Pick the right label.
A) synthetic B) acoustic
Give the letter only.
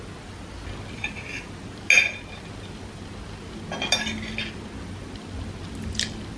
B